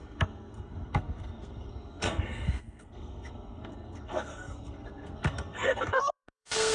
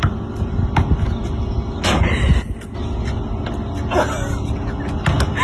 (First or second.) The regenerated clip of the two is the first